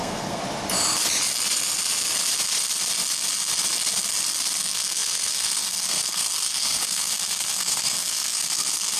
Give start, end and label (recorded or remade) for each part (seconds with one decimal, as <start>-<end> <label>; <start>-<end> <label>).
0.0-0.4 remade; 0.4-4.6 recorded; 4.6-9.0 remade